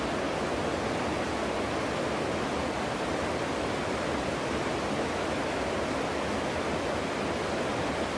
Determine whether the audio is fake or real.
real